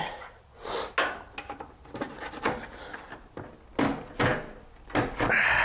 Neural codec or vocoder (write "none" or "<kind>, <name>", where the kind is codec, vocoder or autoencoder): none